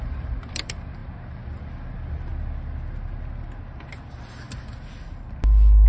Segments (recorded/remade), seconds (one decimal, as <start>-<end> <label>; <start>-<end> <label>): 0.0-2.3 remade; 2.3-5.9 recorded